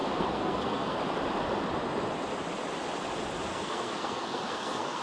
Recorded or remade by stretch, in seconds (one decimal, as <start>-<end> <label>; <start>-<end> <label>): 0.0-1.0 remade; 1.0-3.5 recorded; 3.5-5.0 remade